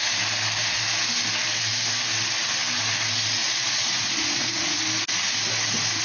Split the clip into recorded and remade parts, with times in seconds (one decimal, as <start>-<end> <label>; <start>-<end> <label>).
0.0-3.4 recorded; 3.4-4.8 remade; 4.8-6.0 recorded